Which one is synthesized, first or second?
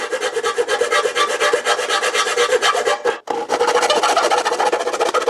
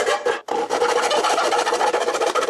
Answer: second